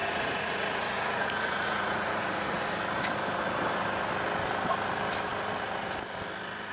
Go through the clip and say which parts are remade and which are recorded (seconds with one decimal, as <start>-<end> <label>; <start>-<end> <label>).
0.0-2.7 remade; 2.7-6.7 recorded